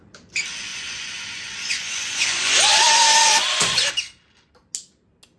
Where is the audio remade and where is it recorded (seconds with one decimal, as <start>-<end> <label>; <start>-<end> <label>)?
0.0-0.7 recorded; 0.7-3.9 remade; 3.9-5.4 recorded